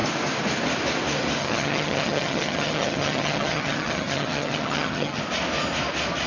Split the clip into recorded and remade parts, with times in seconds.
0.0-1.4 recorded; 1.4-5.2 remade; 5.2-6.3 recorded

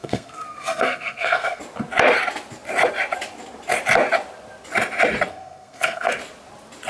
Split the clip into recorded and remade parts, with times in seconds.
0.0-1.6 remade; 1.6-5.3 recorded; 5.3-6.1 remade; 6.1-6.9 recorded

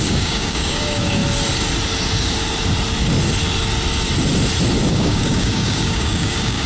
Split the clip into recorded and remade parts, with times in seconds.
0.0-1.2 remade; 1.2-4.9 recorded; 4.9-6.7 remade